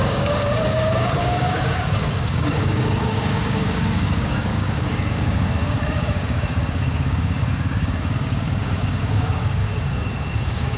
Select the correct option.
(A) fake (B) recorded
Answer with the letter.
A